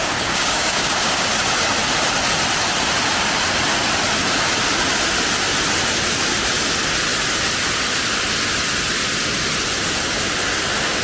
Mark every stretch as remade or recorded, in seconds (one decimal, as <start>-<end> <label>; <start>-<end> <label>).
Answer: 0.0-1.3 remade; 1.3-11.0 recorded